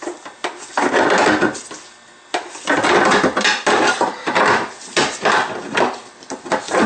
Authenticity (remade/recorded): recorded